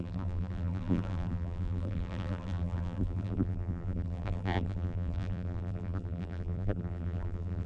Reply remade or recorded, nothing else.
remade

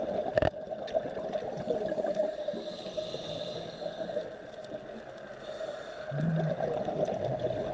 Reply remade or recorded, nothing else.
recorded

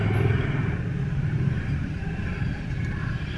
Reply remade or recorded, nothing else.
recorded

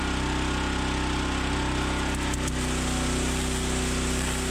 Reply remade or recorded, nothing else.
recorded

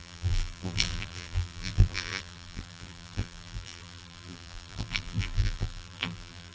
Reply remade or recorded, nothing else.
remade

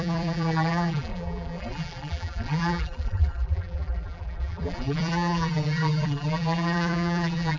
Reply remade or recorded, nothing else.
remade